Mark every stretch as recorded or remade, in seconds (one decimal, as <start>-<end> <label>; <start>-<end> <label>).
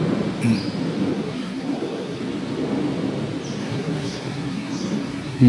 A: 0.0-1.1 recorded; 1.1-2.2 remade; 2.2-3.6 recorded; 3.6-5.5 remade